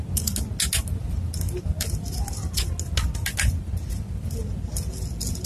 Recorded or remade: recorded